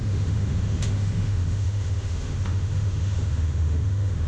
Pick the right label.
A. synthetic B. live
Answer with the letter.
A